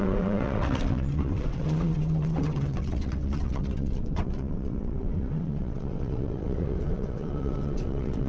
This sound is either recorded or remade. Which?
remade